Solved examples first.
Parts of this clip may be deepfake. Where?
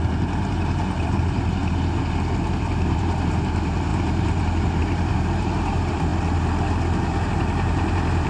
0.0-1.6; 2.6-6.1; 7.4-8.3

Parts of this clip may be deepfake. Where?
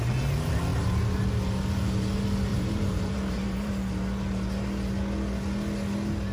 2.5-3.7